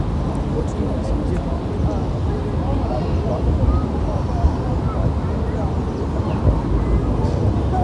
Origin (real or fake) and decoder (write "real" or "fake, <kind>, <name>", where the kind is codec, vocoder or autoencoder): real